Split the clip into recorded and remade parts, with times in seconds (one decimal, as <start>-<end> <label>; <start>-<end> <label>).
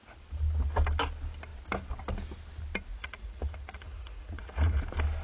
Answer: 0.0-2.9 recorded; 2.9-4.8 remade; 4.8-5.2 recorded